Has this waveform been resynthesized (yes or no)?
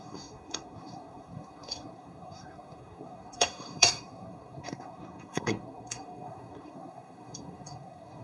yes